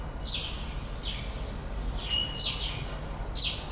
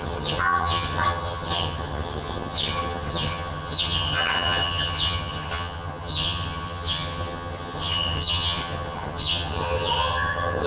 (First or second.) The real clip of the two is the first